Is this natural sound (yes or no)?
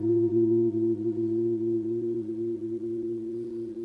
no